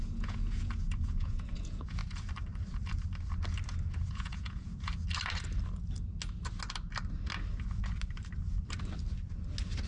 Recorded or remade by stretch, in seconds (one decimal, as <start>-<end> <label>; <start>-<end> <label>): 0.0-2.0 remade; 2.0-4.1 recorded; 4.1-4.9 remade; 4.9-9.9 recorded